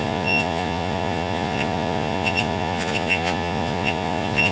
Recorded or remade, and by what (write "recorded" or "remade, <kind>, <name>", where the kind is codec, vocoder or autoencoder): remade, vocoder, Vocos